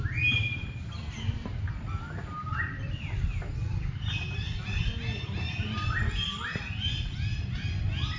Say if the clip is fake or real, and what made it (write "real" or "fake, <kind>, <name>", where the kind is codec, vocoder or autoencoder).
real